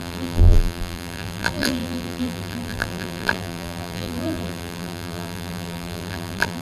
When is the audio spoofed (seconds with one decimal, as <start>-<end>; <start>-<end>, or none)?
0.0-6.6